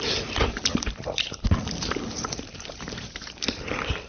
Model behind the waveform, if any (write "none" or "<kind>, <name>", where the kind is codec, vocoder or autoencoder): vocoder, BigVGAN v2